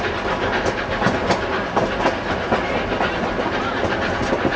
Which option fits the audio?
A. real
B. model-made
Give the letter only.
A